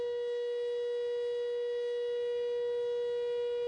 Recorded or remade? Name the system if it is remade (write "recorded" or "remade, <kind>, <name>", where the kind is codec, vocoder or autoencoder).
recorded